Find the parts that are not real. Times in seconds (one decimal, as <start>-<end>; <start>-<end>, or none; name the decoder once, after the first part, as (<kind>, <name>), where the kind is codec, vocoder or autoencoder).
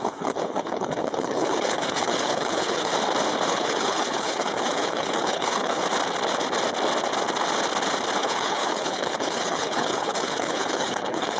0.0-2.9 (codec, HILCodec); 3.5-5.8; 8.2-11.4